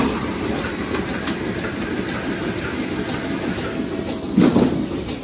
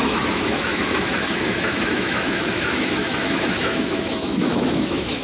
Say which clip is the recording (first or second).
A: first